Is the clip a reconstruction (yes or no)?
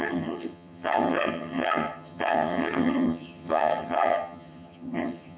yes